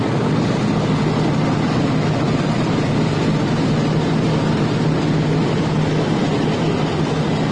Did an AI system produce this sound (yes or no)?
no